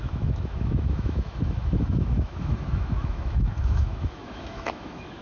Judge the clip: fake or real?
fake